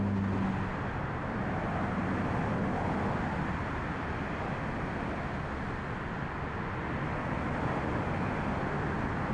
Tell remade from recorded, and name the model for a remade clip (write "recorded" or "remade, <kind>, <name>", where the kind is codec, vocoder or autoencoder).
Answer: recorded